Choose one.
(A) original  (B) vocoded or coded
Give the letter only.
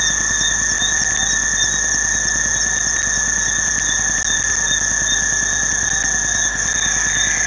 A